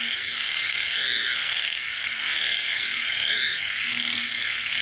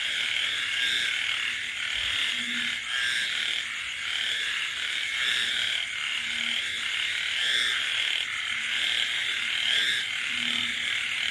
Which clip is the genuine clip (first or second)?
second